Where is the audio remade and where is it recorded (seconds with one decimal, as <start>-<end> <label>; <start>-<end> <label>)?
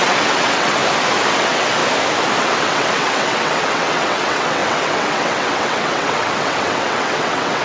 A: 0.0-0.8 remade; 0.8-1.3 recorded; 1.3-1.8 remade; 1.8-2.4 recorded; 2.4-7.6 remade